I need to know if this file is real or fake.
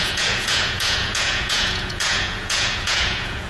fake